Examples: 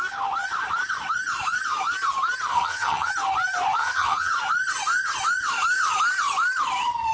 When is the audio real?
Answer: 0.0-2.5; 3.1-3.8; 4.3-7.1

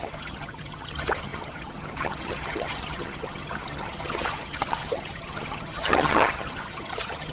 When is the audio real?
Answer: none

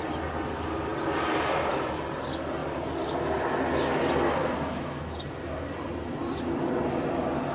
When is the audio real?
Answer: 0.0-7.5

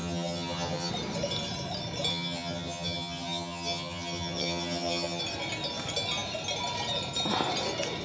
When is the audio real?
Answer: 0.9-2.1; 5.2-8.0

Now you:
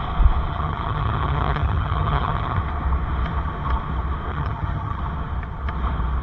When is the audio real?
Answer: 0.0-0.5; 2.6-4.3; 5.0-6.2

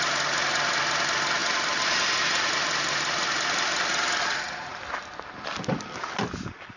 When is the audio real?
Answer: 0.0-6.8

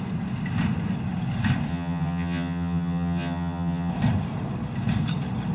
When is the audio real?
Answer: 0.0-1.7; 3.9-5.5

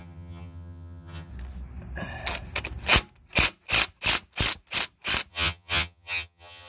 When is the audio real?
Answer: 1.3-5.3